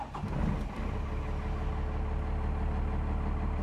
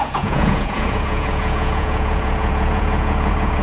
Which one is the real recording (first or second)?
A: first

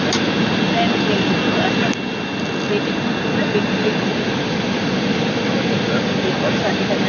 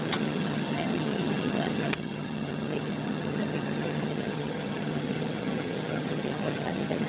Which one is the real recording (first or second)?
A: first